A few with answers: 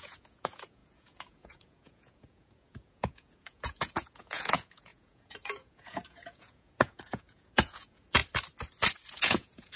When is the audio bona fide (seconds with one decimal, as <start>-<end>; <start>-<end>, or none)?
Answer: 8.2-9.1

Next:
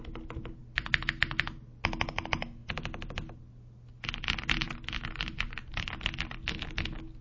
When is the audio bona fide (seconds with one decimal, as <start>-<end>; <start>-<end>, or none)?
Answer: 0.0-7.2

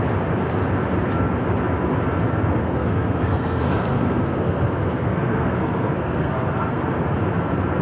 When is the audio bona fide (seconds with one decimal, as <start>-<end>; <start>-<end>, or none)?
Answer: 0.0-2.6; 6.8-7.8